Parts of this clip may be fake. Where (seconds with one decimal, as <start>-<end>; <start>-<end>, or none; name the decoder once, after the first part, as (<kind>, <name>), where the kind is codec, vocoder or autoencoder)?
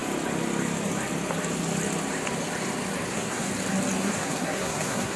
3.1-3.5 (codec, SNAC); 4.0-5.2